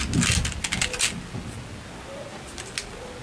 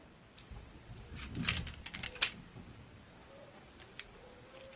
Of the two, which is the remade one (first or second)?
second